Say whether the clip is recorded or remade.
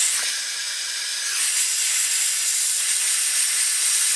recorded